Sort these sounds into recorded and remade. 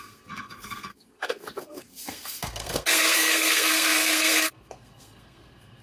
remade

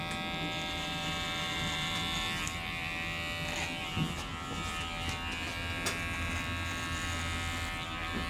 recorded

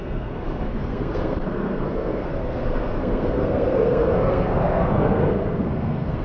remade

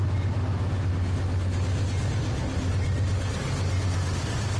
recorded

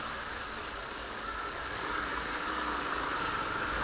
remade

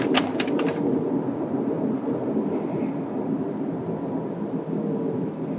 recorded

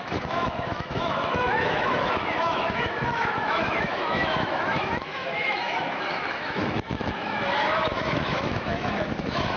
remade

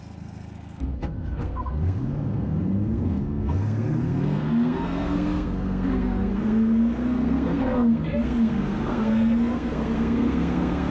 remade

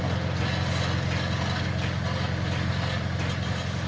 recorded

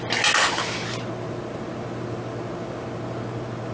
recorded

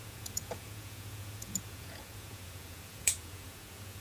remade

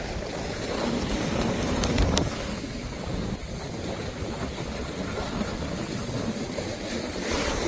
remade